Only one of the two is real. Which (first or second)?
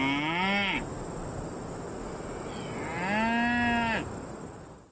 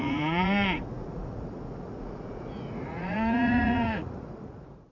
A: first